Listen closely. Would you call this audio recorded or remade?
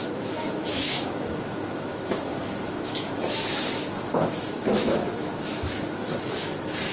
remade